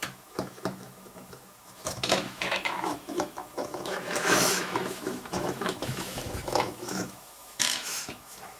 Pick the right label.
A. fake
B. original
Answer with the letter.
A